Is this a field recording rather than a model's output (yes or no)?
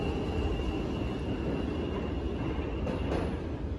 yes